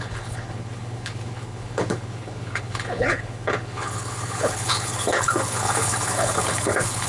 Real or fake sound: fake